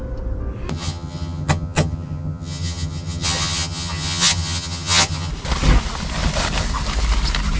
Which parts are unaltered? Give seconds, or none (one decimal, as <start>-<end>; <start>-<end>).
0.0-0.7; 5.3-7.6